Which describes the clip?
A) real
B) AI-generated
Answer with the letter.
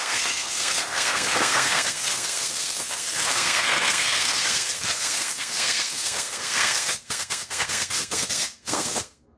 B